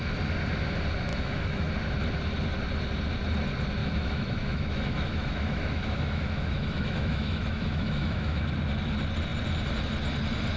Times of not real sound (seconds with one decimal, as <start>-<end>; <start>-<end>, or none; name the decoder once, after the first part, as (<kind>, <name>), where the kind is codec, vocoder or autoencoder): 1.1-1.7 (autoencoder, DAC-VAE); 3.8-8.4